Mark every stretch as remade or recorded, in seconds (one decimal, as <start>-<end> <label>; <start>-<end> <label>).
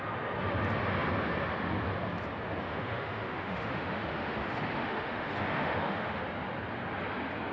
0.0-2.6 recorded; 2.6-6.2 remade; 6.2-7.5 recorded